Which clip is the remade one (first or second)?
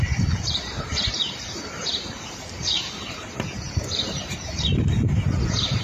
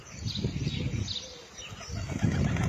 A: first